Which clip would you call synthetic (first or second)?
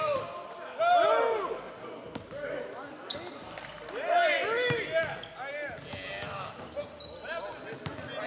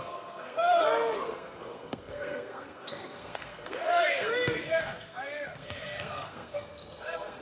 second